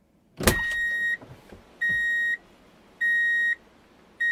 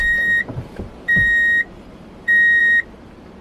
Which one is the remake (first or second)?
second